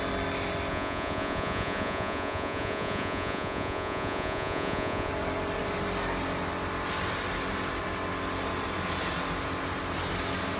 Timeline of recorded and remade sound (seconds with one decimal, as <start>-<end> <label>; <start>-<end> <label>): 0.0-0.7 recorded; 0.7-5.1 remade; 5.1-10.6 recorded